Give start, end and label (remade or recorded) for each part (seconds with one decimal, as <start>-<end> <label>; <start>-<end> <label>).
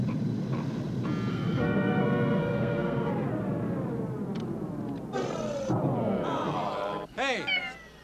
0.0-1.3 recorded; 1.3-3.1 remade; 3.1-8.0 recorded